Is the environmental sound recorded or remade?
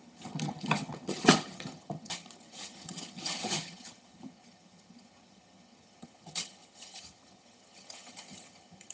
remade